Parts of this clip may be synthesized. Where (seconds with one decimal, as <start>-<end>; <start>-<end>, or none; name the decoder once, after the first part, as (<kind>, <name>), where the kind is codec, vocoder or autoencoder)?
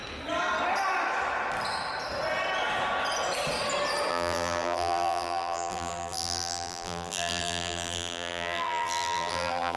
4.1-9.8 (vocoder, BigVGAN v2)